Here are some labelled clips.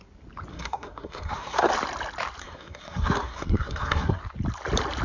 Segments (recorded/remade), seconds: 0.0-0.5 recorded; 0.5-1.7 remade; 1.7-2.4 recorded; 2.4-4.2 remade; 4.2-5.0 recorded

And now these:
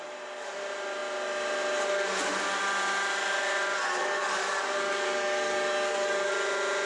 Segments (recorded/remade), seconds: 0.0-4.0 recorded; 4.0-6.3 remade; 6.3-6.9 recorded

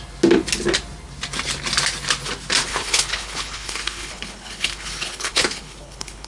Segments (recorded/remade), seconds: 0.0-2.6 recorded; 2.6-6.3 remade

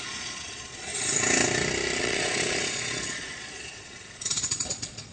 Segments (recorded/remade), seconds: 0.0-0.9 remade; 0.9-2.0 recorded; 2.0-5.1 remade

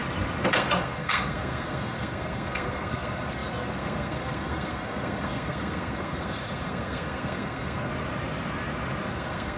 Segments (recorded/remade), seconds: 0.0-0.5 recorded; 0.5-7.9 remade; 7.9-9.1 recorded; 9.1-9.6 remade

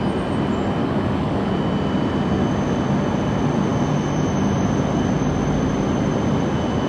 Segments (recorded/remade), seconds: 0.0-0.8 recorded; 0.8-1.5 remade; 1.5-6.9 recorded

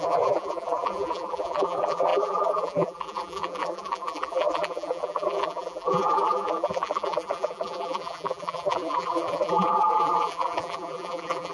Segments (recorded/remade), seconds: 0.0-11.5 remade